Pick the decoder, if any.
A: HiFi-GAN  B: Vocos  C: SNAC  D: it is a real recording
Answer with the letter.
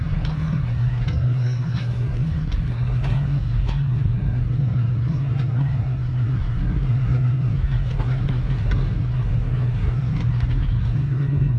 C